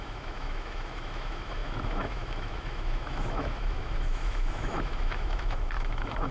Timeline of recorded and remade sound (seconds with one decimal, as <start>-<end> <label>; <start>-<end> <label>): 0.0-6.3 remade